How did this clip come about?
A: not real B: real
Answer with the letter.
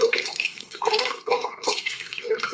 A